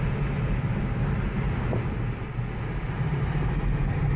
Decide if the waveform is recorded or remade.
recorded